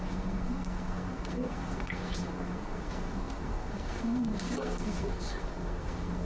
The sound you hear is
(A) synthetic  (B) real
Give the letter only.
A